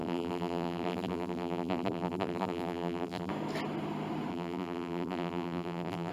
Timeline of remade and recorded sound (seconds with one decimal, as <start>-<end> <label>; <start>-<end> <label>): 0.0-3.3 remade; 3.3-4.3 recorded; 4.3-6.1 remade